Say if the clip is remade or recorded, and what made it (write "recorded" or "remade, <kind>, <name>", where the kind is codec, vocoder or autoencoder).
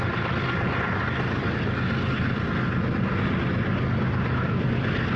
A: recorded